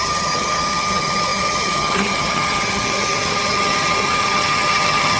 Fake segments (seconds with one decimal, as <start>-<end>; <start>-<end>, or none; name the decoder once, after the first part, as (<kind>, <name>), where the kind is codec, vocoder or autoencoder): 0.0-5.2 (vocoder, HiFi-GAN)